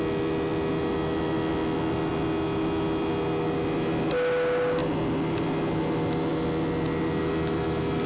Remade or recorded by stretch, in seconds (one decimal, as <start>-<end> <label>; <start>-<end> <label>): 0.0-8.1 recorded